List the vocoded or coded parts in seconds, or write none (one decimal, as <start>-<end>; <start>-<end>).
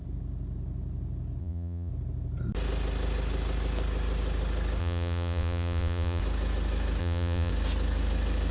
1.4-1.9; 4.8-6.2; 7.0-7.5